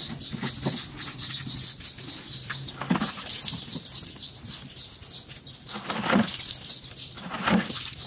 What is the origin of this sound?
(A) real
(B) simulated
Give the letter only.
A